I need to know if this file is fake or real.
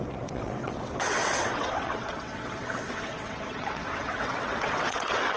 fake